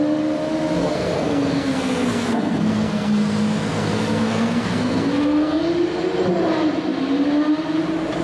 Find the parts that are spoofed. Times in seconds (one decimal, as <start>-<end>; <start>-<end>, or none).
0.8-5.6